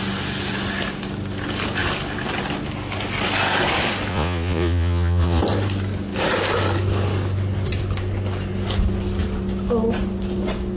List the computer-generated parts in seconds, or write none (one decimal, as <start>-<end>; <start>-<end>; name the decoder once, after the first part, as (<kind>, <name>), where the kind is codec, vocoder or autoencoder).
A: 4.1-5.4 (vocoder, Vocos)